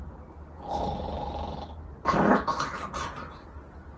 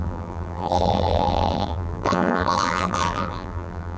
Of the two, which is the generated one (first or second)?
second